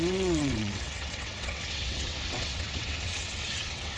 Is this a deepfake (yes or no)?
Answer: yes